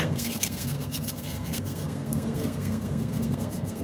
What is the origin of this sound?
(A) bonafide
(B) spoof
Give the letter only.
B